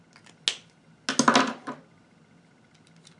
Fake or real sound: real